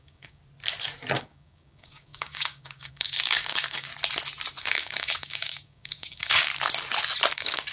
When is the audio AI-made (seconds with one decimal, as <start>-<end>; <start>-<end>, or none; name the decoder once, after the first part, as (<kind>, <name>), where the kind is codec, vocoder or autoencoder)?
0.0-0.4 (codec, DAC); 1.2-3.9; 4.6-6.5; 7.3-7.7